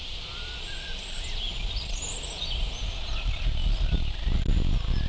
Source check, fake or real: real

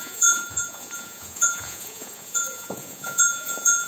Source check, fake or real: fake